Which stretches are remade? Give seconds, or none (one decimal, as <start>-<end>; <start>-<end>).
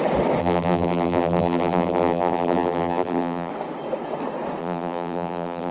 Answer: 0.4-3.5; 4.6-5.7